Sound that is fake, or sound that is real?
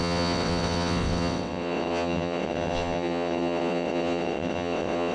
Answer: fake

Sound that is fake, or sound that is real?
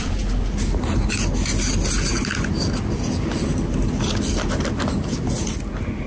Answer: real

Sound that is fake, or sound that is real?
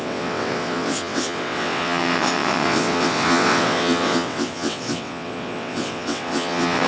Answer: fake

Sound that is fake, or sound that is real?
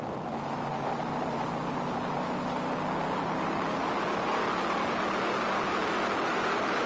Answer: real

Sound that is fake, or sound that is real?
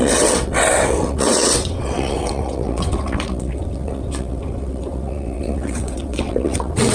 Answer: fake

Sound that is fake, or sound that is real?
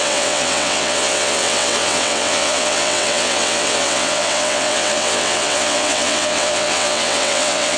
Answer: fake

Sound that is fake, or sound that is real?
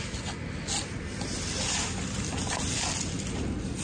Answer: real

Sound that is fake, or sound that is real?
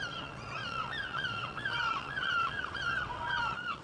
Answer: fake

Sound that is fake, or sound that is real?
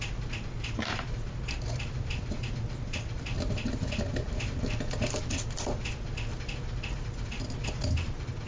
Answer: real